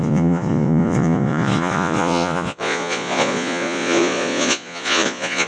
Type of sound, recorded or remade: remade